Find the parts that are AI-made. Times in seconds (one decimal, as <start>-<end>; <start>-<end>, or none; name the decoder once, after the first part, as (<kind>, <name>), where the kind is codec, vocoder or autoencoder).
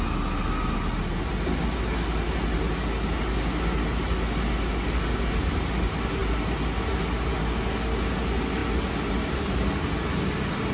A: none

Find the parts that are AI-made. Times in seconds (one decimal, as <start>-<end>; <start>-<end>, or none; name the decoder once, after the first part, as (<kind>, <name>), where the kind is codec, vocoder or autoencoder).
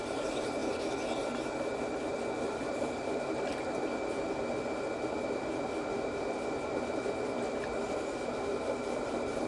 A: 0.0-0.6 (vocoder, BigVGAN v2); 2.4-3.5; 7.5-9.5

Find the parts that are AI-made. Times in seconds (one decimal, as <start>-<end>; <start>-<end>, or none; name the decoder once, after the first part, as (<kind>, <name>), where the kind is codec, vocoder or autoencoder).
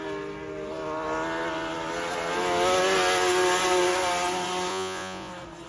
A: 4.7-5.3 (vocoder, Vocos)